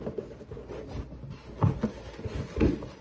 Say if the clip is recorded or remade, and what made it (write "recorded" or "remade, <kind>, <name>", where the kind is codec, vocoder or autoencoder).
recorded